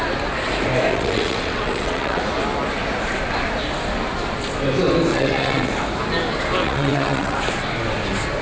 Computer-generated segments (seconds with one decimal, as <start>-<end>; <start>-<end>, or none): 0.9-2.2; 5.1-5.7; 6.6-7.4